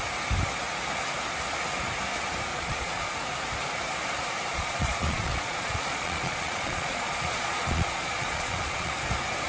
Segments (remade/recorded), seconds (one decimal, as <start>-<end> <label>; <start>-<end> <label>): 0.0-2.5 recorded; 2.5-3.1 remade; 3.1-4.5 recorded; 4.5-8.9 remade; 8.9-9.5 recorded